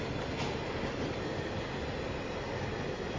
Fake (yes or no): no